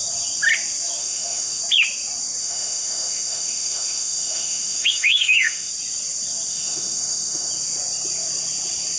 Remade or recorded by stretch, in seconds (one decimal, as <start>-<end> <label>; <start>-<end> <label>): 0.0-1.0 recorded; 1.0-1.6 remade; 1.6-2.4 recorded; 2.4-5.7 remade; 5.7-6.5 recorded; 6.5-7.5 remade; 7.5-9.0 recorded